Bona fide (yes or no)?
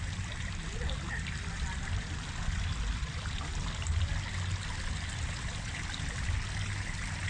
yes